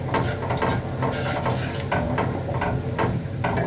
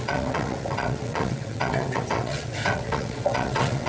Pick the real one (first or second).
first